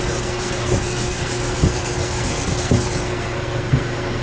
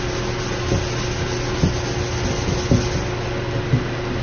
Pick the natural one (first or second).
second